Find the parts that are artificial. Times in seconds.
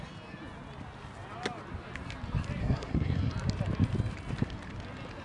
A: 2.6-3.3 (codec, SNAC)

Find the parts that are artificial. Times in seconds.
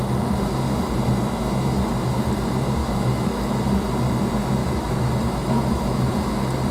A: 2.8-3.6 (autoencoder, DAC-VAE); 4.6-6.1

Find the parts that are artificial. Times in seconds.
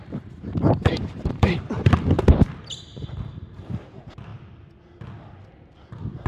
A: 0.0-6.3 (vocoder, BigVGAN v2)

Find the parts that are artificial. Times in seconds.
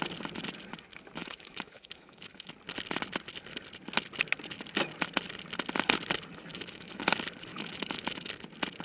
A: 1.2-2.5 (autoencoder, DAC-VAE); 6.5-7.0; 7.5-8.3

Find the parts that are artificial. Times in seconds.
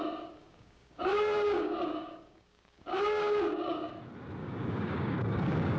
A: 0.4-3.9 (codec, DAC); 4.4-5.8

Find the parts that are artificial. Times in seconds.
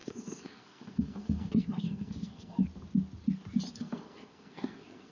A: 0.0-2.6 (codec, SNAC); 3.7-5.1